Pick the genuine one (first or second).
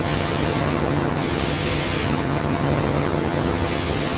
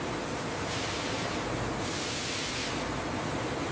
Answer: second